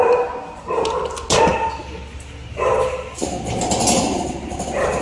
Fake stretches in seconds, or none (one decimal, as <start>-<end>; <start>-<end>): none